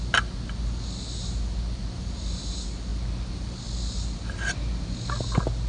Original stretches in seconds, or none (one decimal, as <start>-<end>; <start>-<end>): 0.0-5.7